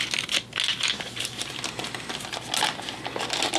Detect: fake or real real